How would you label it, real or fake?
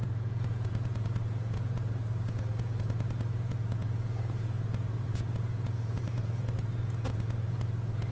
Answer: fake